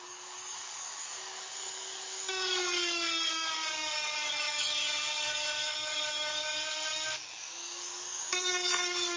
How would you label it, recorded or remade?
remade